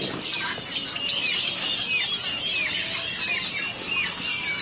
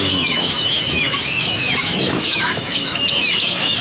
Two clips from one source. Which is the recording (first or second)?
first